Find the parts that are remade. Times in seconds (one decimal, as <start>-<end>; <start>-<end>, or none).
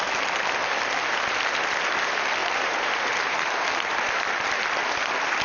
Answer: 2.4-3.4